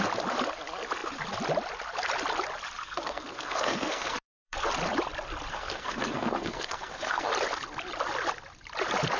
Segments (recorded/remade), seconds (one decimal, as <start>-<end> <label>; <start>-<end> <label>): 0.0-2.8 recorded; 2.8-4.7 remade; 4.7-5.5 recorded; 5.5-7.3 remade; 7.3-9.2 recorded